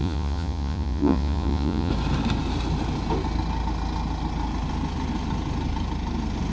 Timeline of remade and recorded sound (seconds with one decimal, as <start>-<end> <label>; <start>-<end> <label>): 0.0-1.9 remade; 1.9-6.5 recorded